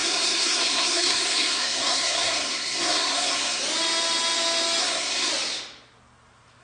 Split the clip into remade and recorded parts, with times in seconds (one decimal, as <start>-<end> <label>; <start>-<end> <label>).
0.0-3.6 remade; 3.6-4.8 recorded; 4.8-5.3 remade; 5.3-6.6 recorded